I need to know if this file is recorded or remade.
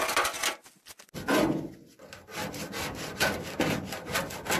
recorded